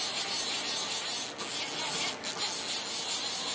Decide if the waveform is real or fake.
real